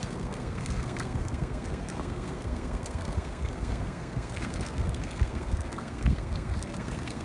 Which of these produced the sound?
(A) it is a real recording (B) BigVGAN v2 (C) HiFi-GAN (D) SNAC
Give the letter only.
D